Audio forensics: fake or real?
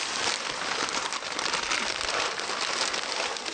real